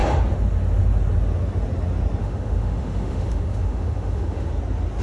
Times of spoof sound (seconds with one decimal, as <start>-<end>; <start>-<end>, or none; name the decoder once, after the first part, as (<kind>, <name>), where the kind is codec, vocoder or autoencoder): 2.2-4.5 (autoencoder, DAC-VAE)